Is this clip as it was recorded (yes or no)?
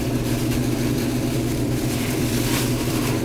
no